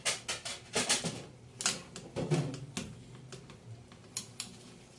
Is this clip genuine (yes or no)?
yes